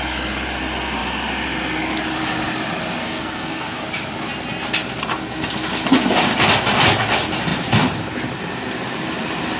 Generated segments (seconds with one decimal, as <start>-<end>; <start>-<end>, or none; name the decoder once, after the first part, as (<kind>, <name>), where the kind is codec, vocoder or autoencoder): 3.0-3.8 (codec, SNAC)